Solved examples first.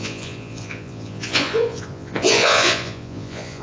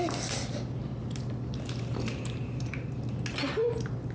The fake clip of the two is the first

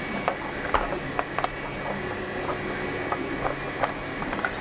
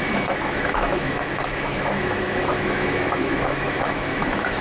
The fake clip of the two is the second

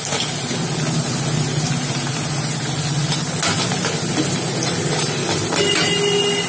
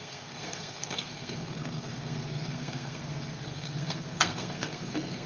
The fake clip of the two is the second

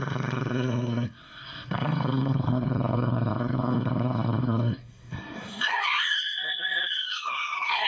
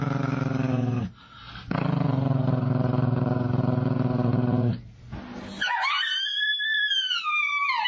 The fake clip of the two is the first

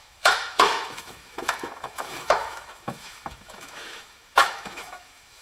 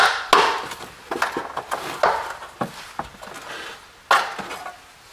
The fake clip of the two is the first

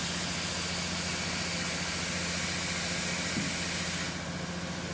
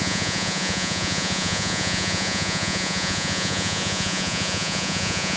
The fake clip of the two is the second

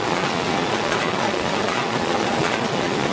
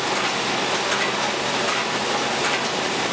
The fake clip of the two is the first